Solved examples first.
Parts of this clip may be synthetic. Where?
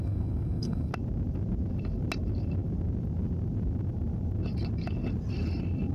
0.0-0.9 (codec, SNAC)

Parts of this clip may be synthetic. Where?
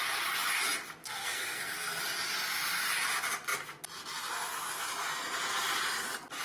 1.0-2.0 (codec, SNAC)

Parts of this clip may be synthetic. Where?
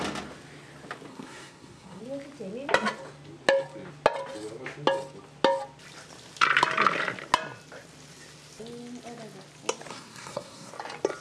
1.1-2.0 (codec, SNAC); 9.9-10.7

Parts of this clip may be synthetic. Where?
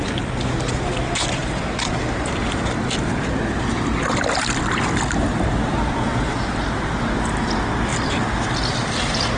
none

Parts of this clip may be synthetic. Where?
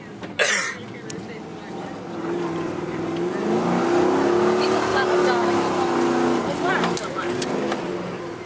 none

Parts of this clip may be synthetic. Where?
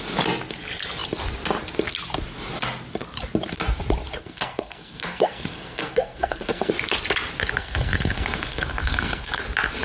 4.2-6.7 (codec, SNAC); 7.6-9.4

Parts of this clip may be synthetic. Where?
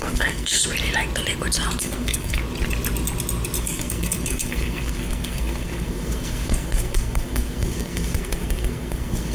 0.0-0.6 (codec, SNAC); 1.8-2.4; 3.6-9.3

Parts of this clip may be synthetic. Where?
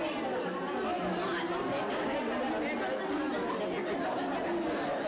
none